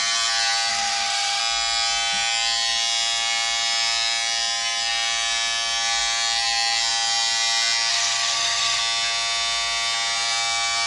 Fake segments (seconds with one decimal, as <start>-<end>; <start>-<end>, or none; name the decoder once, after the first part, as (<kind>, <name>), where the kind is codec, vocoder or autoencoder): 0.7-1.4 (codec, SNAC); 7.9-8.8